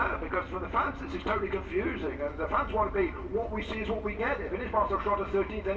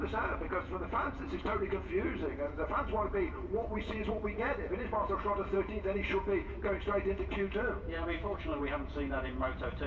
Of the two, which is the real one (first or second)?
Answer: first